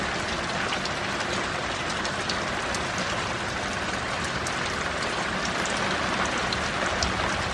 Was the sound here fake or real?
real